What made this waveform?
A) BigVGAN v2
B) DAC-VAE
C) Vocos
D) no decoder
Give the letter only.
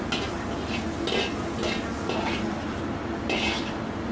D